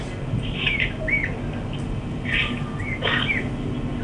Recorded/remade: recorded